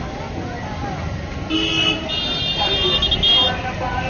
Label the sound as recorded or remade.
recorded